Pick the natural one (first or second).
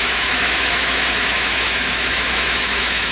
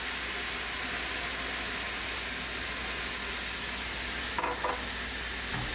second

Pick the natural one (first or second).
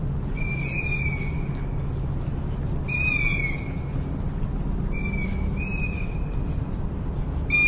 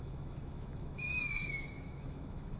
first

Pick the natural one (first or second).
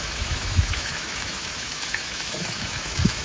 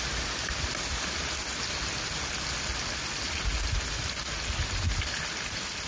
second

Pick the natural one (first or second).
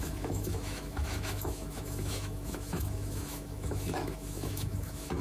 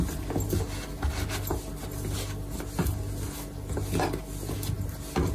second